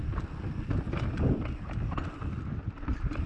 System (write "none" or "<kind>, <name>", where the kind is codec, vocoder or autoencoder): none